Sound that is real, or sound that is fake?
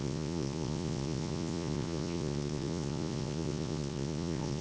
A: fake